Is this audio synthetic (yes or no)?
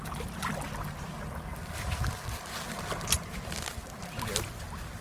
no